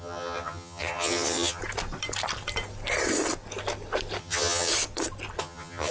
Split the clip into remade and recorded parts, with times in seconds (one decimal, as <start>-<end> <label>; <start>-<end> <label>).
0.0-1.6 remade; 1.6-4.2 recorded; 4.2-4.7 remade; 4.7-5.4 recorded; 5.4-5.9 remade